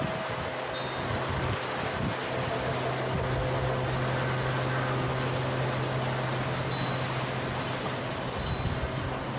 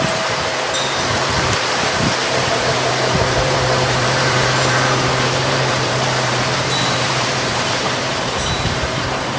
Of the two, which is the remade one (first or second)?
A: second